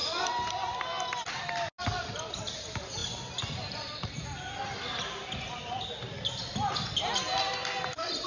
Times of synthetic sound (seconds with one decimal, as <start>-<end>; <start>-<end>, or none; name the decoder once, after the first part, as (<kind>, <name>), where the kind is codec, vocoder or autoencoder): none